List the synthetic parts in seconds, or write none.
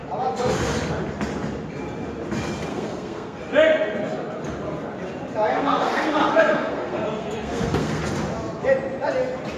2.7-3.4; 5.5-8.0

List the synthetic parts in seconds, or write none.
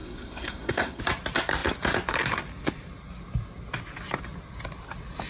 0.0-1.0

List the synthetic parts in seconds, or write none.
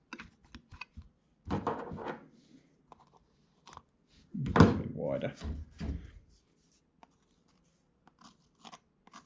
none